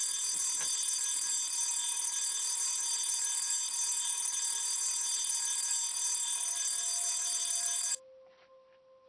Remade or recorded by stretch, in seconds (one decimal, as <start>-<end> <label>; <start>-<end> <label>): 0.0-9.1 recorded